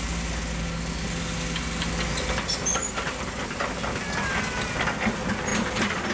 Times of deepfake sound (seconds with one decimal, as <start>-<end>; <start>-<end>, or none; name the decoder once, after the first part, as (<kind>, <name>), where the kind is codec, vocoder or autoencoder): 5.5-6.1 (vocoder, BigVGAN v2)